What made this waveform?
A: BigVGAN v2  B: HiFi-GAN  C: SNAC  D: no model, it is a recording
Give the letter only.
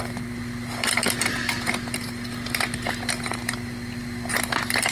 D